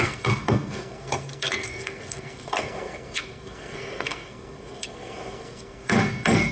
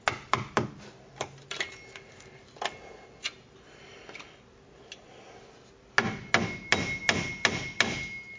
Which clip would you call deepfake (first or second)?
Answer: first